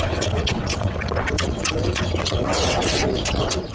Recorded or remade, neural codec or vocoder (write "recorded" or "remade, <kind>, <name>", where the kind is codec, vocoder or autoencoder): remade, vocoder, WaveNeXt